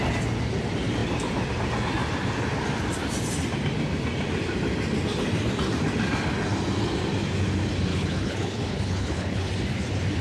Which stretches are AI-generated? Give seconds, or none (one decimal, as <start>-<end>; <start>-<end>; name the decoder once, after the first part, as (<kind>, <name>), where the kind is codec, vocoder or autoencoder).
7.9-9.5 (codec, HILCodec)